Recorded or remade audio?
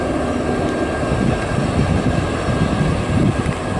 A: recorded